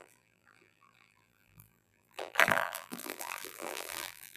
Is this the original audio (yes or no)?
no